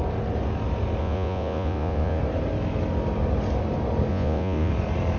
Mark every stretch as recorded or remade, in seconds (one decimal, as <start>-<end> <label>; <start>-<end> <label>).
0.0-1.0 recorded; 1.0-2.2 remade; 2.2-4.1 recorded; 4.1-4.7 remade; 4.7-5.2 recorded